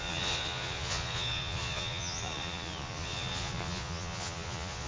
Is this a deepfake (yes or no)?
yes